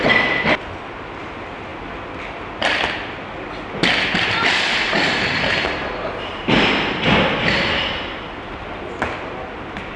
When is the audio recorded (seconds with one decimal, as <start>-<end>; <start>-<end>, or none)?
0.0-10.0